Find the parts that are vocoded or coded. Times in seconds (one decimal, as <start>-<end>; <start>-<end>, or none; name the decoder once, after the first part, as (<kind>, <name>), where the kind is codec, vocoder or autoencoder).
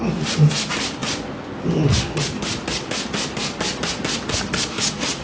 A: none